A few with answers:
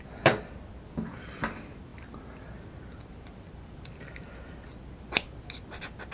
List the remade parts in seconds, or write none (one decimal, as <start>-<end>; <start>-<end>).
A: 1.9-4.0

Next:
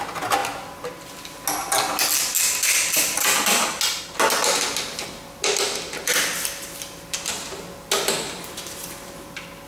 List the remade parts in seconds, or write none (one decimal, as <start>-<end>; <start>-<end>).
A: none

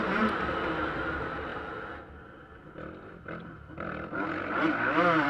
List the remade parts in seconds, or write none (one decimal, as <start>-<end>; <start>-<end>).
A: none